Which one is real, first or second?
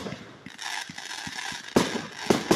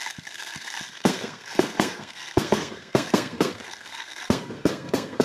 first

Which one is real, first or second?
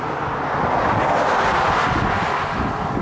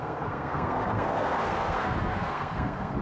first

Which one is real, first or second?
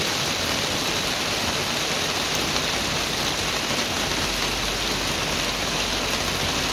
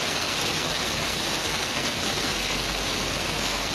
first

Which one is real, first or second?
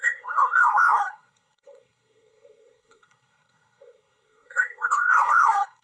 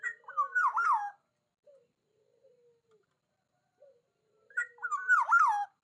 second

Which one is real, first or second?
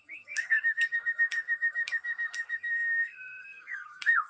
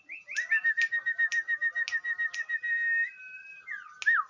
second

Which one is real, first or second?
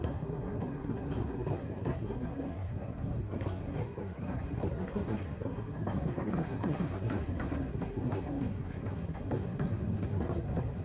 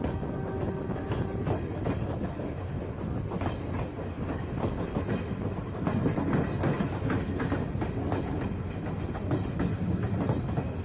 second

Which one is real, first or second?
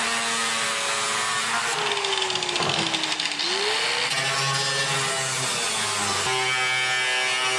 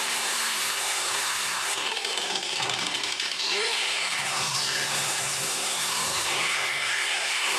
first